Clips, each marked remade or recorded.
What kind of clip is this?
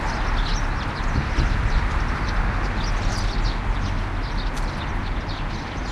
recorded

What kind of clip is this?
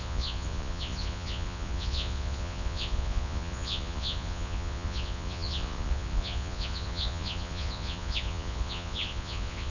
remade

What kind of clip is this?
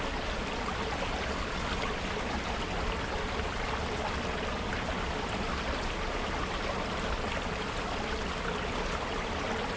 recorded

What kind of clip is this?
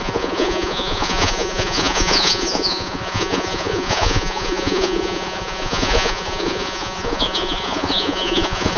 remade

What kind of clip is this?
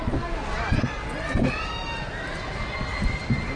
recorded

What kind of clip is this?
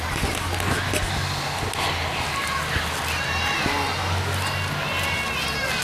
recorded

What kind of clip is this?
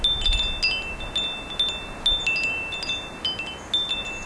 recorded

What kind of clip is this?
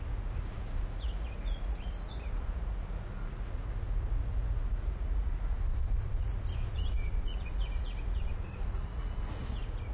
remade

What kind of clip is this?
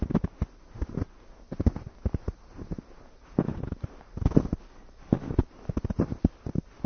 recorded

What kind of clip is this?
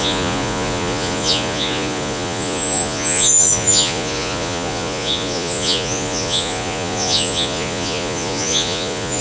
remade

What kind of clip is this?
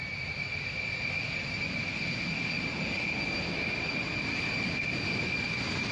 recorded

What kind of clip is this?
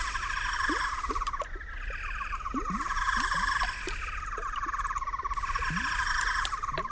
recorded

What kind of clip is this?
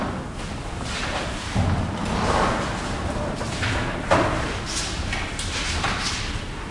recorded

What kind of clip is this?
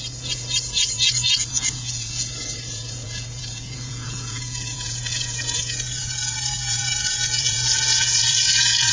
remade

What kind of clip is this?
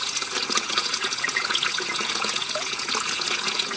remade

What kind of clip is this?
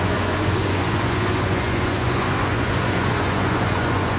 remade